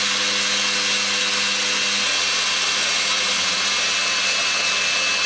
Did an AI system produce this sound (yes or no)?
no